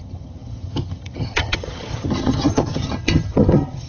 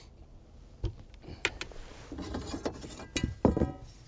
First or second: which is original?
second